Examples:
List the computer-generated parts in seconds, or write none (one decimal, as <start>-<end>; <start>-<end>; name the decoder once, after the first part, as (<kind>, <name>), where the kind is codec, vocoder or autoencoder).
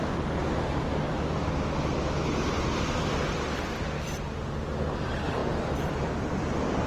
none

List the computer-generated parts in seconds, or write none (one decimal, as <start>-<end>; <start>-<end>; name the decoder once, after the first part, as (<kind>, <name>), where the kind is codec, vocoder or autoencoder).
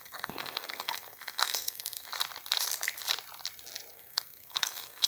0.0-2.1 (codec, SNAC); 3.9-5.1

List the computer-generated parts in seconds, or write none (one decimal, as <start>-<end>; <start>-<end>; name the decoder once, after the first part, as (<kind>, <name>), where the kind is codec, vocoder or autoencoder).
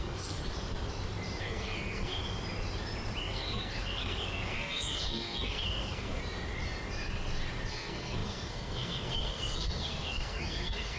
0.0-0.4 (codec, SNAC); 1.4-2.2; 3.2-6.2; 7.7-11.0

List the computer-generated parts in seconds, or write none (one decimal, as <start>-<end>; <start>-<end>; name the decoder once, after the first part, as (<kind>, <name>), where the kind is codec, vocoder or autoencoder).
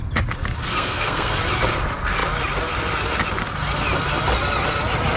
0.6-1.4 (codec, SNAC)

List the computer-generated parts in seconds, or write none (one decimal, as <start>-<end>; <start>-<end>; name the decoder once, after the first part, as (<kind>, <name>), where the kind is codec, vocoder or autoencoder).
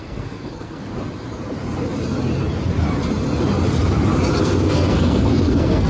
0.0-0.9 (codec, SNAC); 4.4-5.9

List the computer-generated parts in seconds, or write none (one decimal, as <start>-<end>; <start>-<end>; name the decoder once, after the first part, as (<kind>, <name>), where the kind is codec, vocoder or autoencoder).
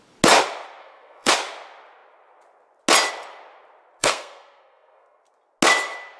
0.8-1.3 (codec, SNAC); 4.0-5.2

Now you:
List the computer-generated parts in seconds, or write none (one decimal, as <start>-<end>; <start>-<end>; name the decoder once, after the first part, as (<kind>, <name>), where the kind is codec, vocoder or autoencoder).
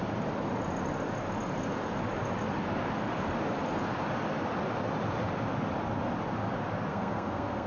6.9-7.7 (codec, SNAC)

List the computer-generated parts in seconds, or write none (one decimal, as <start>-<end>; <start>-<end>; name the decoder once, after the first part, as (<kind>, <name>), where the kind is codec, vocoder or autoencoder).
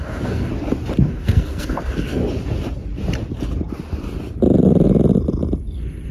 0.0-0.5 (codec, SNAC); 1.0-2.2